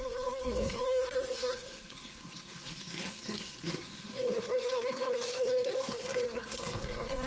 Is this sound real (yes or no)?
no